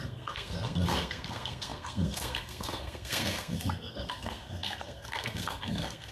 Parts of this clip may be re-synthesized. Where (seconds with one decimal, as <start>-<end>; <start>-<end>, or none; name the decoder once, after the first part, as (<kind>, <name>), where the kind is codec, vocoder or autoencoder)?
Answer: 0.0-6.1 (codec, SNAC)